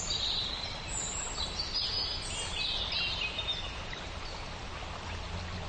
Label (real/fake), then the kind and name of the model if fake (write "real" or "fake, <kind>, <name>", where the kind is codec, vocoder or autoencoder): real